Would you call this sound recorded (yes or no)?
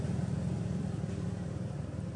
yes